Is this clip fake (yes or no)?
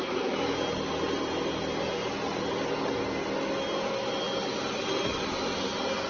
no